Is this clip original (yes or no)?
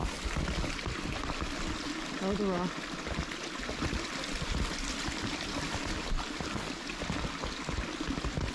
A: yes